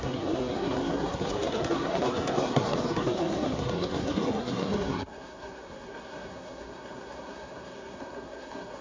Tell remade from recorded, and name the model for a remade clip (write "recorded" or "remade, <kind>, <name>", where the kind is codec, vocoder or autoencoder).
remade, codec, SNAC